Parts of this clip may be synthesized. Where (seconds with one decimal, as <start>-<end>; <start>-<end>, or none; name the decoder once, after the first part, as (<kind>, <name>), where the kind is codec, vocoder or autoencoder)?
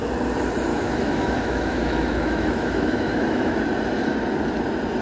0.7-3.6 (autoencoder, DAC-VAE)